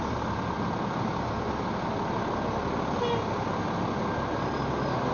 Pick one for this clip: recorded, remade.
recorded